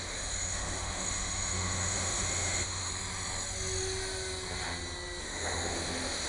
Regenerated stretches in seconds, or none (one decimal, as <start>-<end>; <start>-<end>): 0.0-2.9; 5.2-6.3